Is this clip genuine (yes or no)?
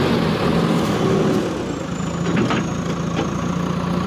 yes